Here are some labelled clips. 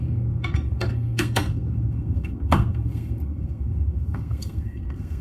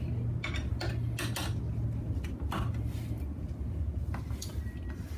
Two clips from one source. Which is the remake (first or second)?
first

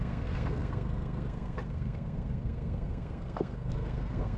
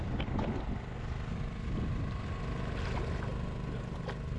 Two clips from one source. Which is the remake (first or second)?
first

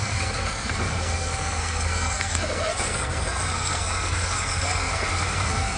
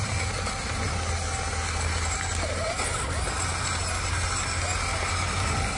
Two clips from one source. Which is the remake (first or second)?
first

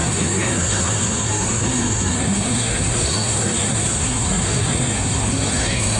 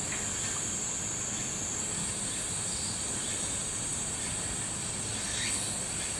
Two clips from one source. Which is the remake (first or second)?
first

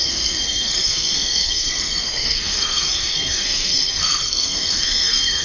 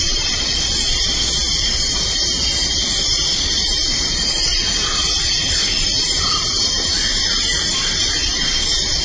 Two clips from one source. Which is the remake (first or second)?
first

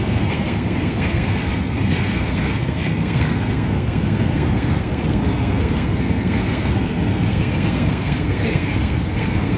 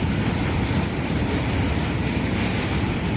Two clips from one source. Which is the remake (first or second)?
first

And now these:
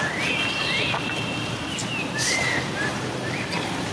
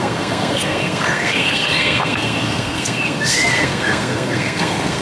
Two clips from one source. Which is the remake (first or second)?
second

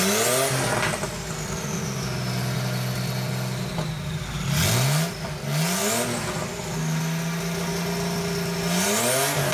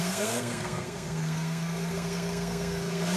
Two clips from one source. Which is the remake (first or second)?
second